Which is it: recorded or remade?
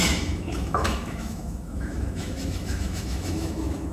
remade